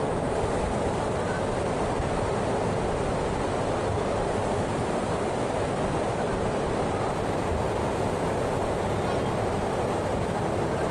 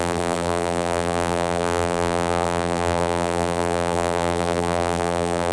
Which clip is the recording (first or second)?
first